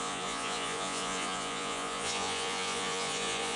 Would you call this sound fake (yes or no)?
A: yes